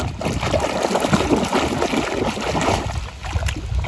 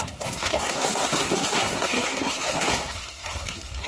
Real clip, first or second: first